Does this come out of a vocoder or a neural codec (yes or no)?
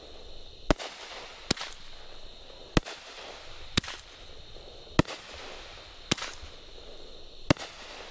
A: no